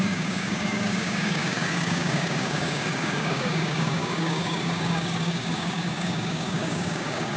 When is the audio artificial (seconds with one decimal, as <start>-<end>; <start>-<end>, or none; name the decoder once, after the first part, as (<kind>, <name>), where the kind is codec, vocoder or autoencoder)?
0.0-7.4 (codec, DAC)